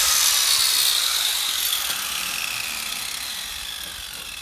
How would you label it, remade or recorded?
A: recorded